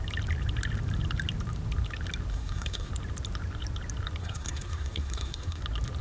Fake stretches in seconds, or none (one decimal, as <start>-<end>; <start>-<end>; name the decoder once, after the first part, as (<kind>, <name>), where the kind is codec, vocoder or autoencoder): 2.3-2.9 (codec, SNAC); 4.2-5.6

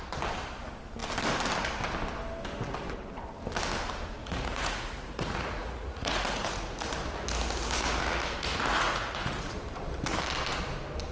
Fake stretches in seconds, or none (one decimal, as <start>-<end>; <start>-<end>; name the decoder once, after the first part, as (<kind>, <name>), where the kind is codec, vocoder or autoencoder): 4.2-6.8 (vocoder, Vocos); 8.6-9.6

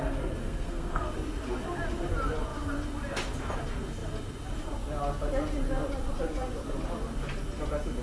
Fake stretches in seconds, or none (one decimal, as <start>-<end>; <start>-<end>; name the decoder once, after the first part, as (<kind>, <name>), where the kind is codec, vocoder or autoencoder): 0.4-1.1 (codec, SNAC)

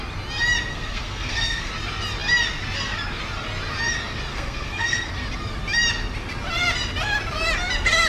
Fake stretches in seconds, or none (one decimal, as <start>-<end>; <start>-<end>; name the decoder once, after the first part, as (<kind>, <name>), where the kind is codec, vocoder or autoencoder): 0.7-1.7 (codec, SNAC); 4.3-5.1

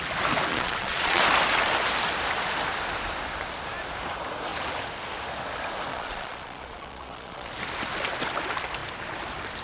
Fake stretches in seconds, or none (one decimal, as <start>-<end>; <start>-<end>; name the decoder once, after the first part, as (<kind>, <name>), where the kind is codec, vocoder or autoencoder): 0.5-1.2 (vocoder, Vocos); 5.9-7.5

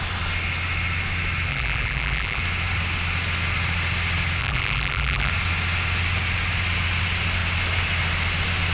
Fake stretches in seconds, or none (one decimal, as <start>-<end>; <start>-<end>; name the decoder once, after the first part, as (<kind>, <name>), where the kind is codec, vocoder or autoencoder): 1.5-2.4 (vocoder, BigVGAN v2); 4.4-5.3

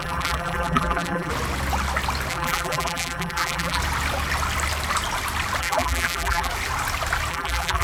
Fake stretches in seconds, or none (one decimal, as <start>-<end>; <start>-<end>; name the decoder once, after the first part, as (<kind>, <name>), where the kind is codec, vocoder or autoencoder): 0.0-1.3 (vocoder, BigVGAN v2); 2.3-3.8; 5.6-6.5; 7.3-7.8

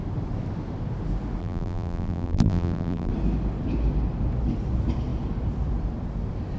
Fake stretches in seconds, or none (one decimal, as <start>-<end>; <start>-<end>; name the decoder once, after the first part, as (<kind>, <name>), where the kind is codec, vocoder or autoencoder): 1.4-3.1 (vocoder, BigVGAN v2)